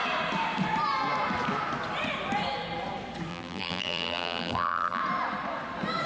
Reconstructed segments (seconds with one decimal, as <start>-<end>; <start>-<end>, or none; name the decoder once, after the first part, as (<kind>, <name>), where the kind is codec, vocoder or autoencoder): 3.3-5.0 (vocoder, BigVGAN v2)